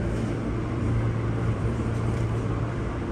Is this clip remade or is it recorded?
remade